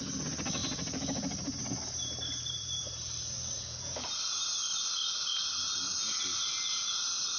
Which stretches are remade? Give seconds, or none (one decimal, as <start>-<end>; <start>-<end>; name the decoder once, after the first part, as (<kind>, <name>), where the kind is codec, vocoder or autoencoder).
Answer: 0.6-5.0 (vocoder, BigVGAN v2); 5.5-6.2